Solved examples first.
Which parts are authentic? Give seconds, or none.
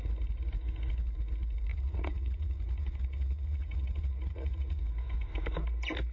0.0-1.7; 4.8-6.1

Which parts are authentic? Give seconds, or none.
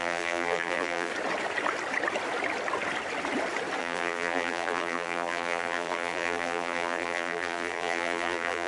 1.1-3.8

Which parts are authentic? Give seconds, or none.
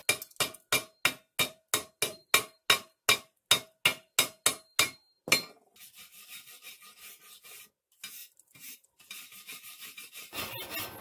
0.0-8.2; 10.4-11.0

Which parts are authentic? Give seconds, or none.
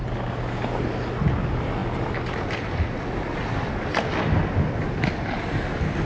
0.0-6.1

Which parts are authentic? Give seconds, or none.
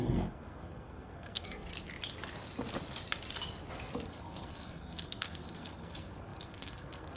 1.7-4.1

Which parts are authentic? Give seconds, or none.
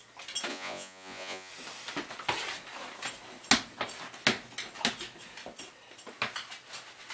0.0-0.5; 1.5-7.1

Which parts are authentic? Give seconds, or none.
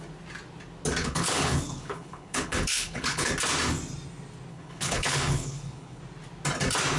0.0-1.0; 3.3-4.5; 6.0-7.0